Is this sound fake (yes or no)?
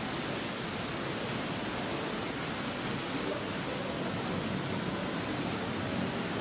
no